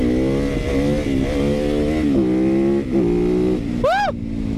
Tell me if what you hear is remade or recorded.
recorded